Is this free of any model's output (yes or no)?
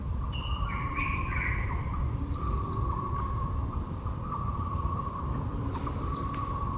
no